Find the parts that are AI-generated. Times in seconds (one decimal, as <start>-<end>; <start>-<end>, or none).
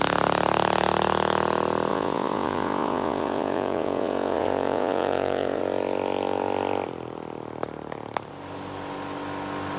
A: 1.9-5.6